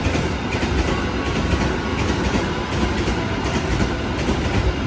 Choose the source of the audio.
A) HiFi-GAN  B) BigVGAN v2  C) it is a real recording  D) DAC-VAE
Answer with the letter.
C